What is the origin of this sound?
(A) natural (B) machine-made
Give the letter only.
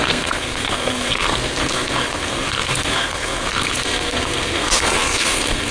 B